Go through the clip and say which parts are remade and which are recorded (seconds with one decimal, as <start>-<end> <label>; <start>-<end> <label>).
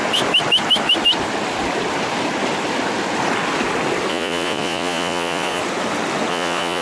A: 0.0-4.1 recorded; 4.1-5.6 remade; 5.6-6.3 recorded; 6.3-6.8 remade